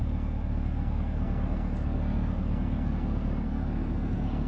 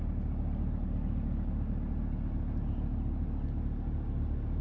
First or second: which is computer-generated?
first